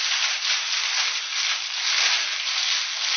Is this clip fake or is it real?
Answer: real